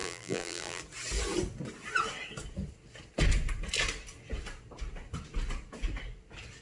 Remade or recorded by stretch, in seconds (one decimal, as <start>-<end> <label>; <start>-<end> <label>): 0.0-0.8 remade; 0.8-6.6 recorded